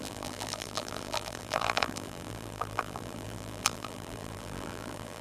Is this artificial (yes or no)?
yes